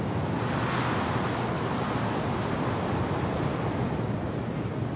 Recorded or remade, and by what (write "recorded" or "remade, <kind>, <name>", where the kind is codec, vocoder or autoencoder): recorded